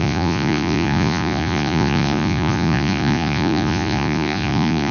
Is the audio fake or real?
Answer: fake